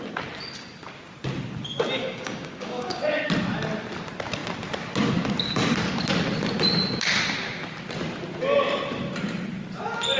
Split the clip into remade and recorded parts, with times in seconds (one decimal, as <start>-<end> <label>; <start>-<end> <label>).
0.0-2.0 recorded; 2.0-3.0 remade; 3.0-10.2 recorded